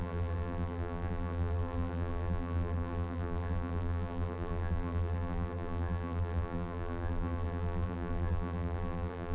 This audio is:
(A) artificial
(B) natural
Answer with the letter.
A